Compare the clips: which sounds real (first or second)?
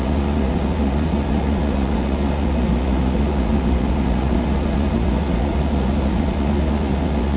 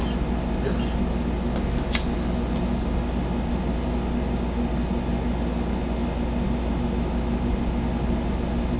second